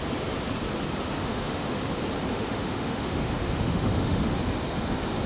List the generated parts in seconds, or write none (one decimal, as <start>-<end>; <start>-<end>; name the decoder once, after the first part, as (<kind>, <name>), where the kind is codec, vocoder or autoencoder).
1.2-1.8 (autoencoder, DAC-VAE); 2.3-4.3